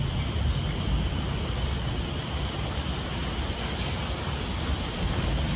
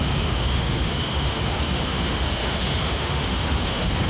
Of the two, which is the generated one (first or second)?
second